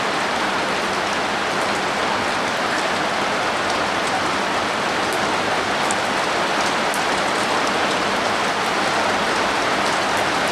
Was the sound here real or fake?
real